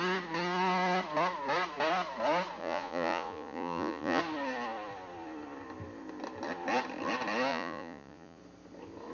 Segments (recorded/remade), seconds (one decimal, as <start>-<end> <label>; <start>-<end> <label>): 0.0-2.6 recorded; 2.6-4.2 remade; 4.2-7.5 recorded; 7.5-8.4 remade; 8.4-9.1 recorded